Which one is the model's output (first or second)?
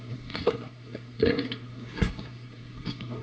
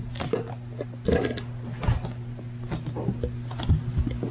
first